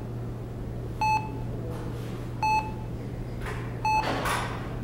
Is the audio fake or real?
real